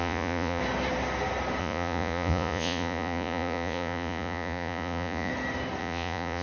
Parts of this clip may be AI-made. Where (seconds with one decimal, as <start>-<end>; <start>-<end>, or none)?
0.0-0.6; 1.6-5.3; 5.8-6.4